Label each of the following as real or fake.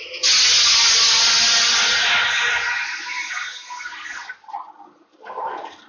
real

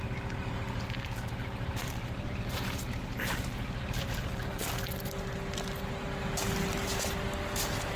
real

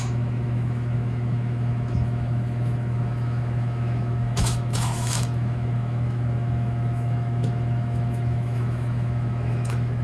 fake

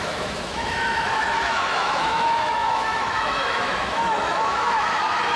fake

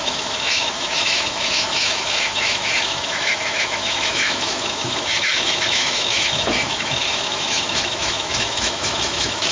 fake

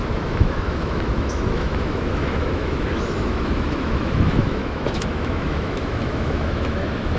fake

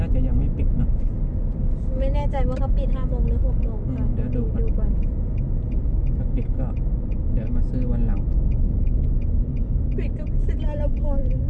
real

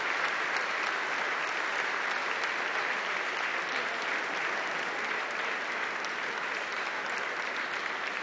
real